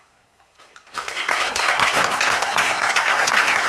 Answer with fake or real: fake